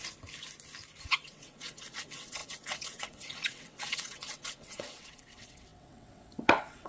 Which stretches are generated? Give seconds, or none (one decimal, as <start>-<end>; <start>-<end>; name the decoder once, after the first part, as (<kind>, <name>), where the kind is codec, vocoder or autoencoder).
1.0-6.9 (vocoder, WaveNeXt)